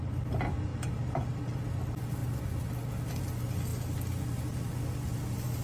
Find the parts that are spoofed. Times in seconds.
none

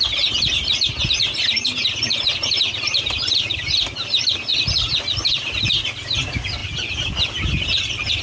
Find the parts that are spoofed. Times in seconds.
none